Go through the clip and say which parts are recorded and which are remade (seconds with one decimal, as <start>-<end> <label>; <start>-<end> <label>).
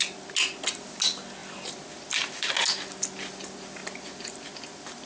0.0-1.4 recorded; 1.4-2.5 remade; 2.5-3.8 recorded; 3.8-5.1 remade